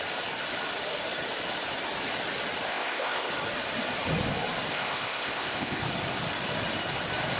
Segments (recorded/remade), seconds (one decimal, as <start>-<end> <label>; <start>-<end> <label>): 0.0-2.7 recorded; 2.7-3.3 remade; 3.3-4.7 recorded; 4.7-5.8 remade; 5.8-7.4 recorded